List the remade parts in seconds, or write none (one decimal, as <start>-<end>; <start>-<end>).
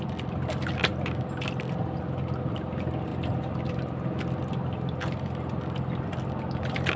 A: none